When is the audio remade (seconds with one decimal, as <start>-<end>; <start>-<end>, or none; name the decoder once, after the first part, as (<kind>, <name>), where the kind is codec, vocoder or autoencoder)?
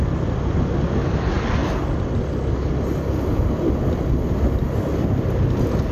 none